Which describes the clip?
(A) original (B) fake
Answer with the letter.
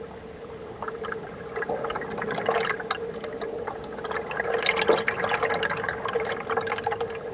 A